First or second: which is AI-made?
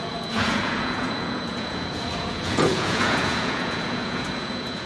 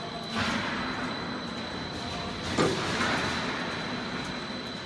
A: first